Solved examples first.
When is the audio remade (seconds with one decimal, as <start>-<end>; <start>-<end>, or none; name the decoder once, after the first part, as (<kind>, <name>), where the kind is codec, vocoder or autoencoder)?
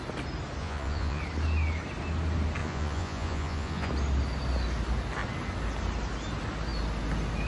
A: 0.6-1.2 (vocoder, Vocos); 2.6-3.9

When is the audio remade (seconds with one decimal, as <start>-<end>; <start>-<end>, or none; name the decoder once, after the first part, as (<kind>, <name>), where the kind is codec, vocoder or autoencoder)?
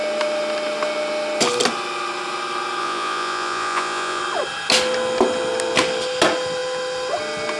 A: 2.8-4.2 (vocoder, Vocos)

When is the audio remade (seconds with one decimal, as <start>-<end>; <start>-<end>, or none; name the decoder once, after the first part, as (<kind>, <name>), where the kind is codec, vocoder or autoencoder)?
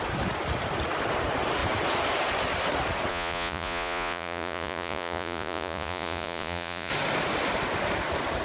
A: 3.1-6.9 (vocoder, Vocos)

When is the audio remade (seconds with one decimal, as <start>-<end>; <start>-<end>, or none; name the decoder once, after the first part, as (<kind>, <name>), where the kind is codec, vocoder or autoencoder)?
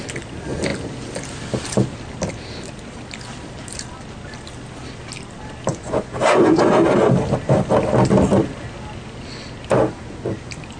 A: 5.7-6.7 (vocoder, Vocos)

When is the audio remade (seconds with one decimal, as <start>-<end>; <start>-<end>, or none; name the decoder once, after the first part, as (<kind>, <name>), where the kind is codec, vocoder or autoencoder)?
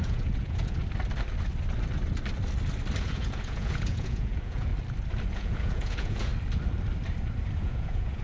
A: 0.0-0.8 (vocoder, Vocos); 3.0-4.7; 5.3-6.3; 7.6-8.2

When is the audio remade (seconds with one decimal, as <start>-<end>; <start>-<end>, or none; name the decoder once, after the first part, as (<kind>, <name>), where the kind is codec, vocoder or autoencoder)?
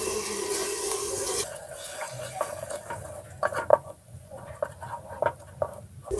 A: 0.6-2.3 (vocoder, Vocos); 3.7-4.5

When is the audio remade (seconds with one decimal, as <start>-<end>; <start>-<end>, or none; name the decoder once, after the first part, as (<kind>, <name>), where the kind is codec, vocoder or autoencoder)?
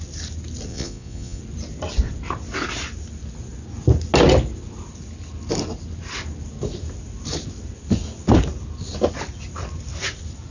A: 0.7-1.4 (vocoder, Vocos)